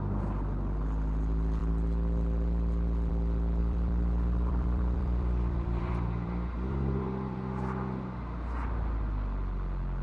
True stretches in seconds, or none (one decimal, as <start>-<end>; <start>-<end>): 0.0-3.6; 8.0-10.0